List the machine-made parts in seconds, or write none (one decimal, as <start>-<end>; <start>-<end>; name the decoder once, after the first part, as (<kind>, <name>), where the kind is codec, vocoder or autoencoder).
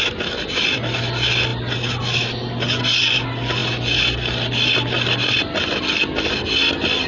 none